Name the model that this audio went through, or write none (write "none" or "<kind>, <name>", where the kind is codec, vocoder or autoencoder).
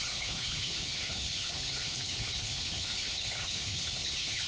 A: codec, HILCodec